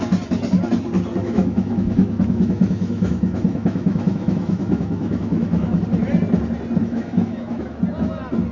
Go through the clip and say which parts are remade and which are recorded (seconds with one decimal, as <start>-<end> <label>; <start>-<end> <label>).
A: 0.0-1.2 recorded; 1.2-5.8 remade; 5.8-6.8 recorded; 6.8-7.8 remade; 7.8-8.5 recorded